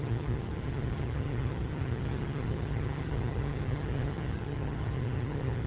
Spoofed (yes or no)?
yes